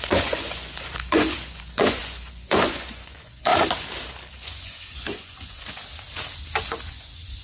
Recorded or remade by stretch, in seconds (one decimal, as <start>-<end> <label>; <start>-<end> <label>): 0.0-3.5 remade; 3.5-4.3 recorded; 4.3-5.8 remade; 5.8-6.6 recorded; 6.6-7.4 remade

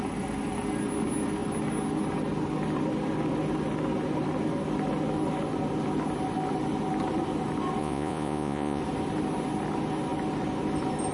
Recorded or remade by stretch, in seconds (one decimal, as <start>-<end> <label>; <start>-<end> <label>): 0.0-7.8 recorded; 7.8-8.8 remade; 8.8-11.1 recorded

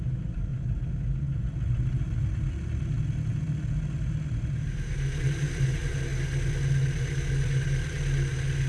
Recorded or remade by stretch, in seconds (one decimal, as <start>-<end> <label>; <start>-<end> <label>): 0.0-0.5 remade; 0.5-5.2 recorded; 5.2-5.9 remade; 5.9-8.7 recorded

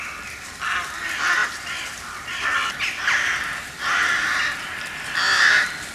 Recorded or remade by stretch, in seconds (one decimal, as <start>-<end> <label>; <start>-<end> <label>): 0.0-1.4 recorded; 1.4-4.9 remade; 4.9-5.9 recorded

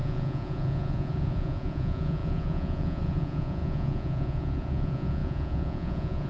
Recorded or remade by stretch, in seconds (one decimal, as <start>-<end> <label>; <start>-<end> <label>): 0.0-6.3 remade